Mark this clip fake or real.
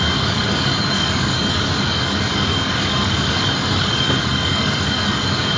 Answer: fake